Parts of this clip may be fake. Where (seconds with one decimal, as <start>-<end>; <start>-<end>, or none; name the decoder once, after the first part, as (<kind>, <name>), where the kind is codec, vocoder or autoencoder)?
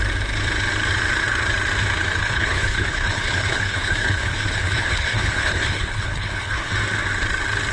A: 2.2-6.7 (codec, HILCodec)